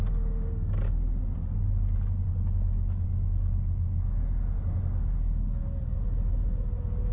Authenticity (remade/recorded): recorded